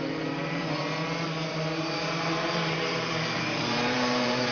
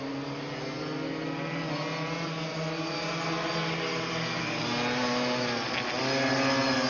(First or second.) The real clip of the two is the second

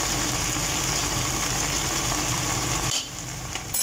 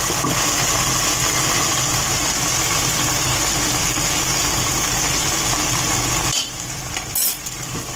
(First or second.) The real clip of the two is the second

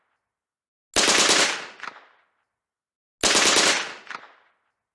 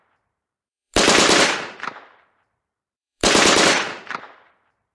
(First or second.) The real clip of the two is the first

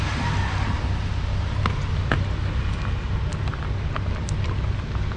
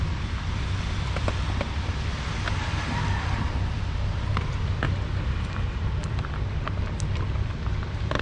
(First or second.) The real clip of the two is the first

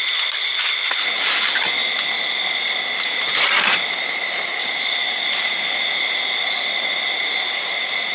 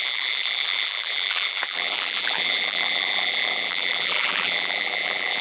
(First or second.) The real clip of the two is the first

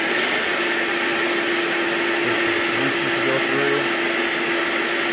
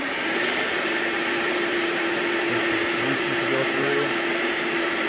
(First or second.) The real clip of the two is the first